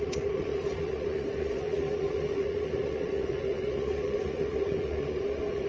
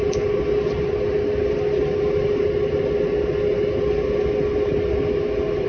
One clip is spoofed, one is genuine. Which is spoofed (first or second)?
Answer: first